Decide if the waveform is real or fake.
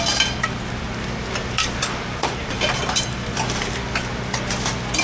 real